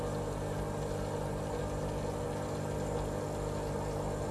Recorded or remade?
recorded